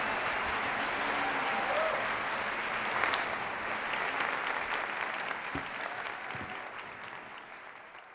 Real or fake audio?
real